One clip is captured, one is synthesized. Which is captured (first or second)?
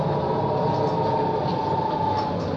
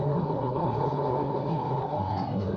first